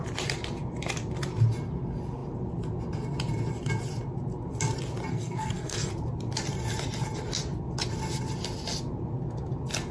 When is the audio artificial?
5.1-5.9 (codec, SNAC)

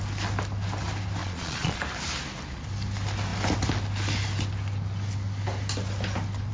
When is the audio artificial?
1.2-1.8 (vocoder, Vocos)

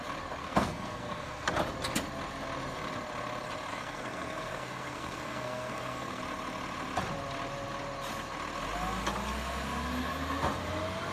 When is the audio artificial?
0.4-1.5 (codec, SNAC); 3.7-6.2

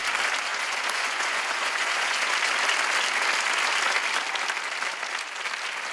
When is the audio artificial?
0.5-2.3 (vocoder, Vocos)

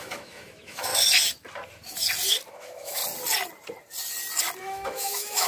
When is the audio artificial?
0.0-0.9 (autoencoder, DAC-VAE); 2.5-3.0; 4.6-5.5

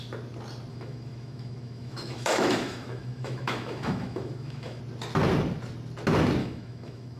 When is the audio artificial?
0.7-4.8 (autoencoder, DAC-VAE); 6.4-7.2